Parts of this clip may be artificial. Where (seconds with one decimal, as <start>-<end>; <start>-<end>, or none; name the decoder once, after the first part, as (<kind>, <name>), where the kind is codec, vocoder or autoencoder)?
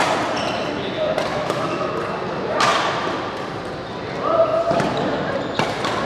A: 1.3-1.9 (autoencoder, DAC-VAE)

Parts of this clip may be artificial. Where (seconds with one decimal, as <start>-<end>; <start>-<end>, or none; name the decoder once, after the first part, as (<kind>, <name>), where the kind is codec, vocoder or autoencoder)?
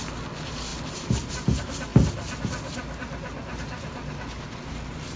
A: none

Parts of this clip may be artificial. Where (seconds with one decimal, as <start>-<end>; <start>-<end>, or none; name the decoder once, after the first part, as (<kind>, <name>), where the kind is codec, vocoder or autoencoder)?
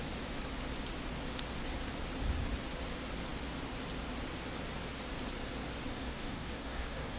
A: 5.9-7.2 (codec, DAC)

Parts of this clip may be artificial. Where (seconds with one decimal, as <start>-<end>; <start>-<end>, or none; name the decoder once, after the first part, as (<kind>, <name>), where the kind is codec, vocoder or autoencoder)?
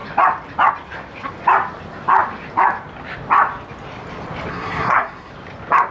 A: 4.5-5.3 (codec, SNAC)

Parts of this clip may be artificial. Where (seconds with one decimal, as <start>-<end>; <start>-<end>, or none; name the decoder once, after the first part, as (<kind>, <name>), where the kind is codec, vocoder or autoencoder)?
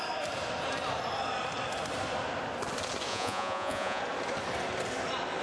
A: 3.1-4.0 (vocoder, Vocos)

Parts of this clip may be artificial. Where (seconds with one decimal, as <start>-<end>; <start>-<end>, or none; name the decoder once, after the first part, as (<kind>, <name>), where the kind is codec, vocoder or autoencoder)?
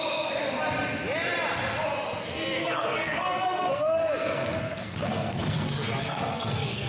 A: 2.6-6.9 (codec, SNAC)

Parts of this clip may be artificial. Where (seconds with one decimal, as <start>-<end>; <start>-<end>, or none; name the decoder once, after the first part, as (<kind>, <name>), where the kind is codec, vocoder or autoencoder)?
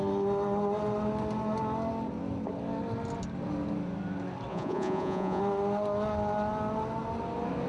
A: 4.5-5.4 (vocoder, Vocos)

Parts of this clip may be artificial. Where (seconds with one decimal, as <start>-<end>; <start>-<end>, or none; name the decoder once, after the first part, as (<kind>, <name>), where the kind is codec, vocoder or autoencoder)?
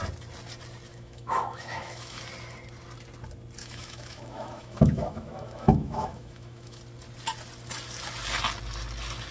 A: 0.9-2.2 (autoencoder, DAC-VAE); 3.6-6.8